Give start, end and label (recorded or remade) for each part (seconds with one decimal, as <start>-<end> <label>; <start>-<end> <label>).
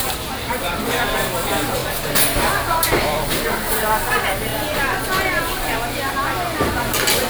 0.0-1.8 remade; 1.8-2.9 recorded; 2.9-4.5 remade; 4.5-6.1 recorded; 6.1-7.3 remade